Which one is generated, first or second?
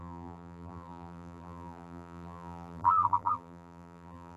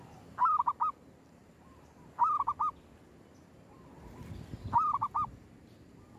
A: first